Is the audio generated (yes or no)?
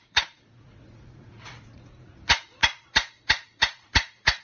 yes